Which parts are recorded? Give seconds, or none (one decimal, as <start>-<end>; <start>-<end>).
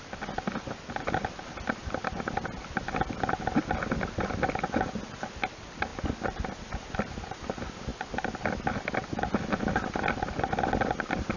0.0-1.8; 2.8-5.9; 6.9-7.9